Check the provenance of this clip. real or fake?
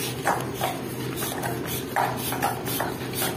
real